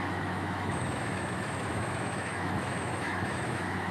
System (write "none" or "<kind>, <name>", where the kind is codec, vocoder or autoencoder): autoencoder, DAC-VAE